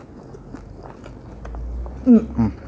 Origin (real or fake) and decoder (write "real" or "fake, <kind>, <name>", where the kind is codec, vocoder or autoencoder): real